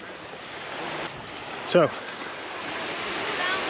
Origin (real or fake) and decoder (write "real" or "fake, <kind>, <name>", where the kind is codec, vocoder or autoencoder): real